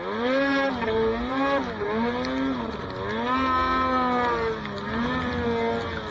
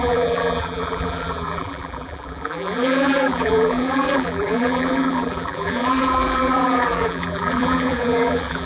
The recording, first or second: first